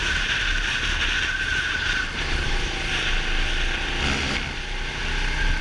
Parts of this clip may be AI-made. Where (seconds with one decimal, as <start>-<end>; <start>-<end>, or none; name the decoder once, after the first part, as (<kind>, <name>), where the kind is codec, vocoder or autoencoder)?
0.0-0.5 (vocoder, BigVGAN v2); 1.5-3.1